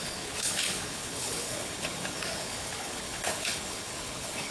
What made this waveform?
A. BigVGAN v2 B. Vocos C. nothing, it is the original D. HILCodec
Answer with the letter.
D